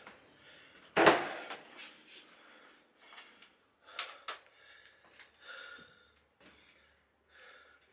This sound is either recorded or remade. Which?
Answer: recorded